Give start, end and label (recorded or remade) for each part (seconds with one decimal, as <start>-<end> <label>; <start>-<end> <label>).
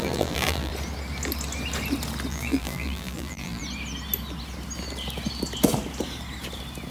0.0-0.7 remade; 0.7-2.3 recorded; 2.3-3.6 remade; 3.6-6.9 recorded